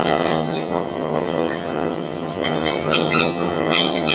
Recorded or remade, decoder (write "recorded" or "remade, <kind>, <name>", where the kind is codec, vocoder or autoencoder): remade, vocoder, HiFi-GAN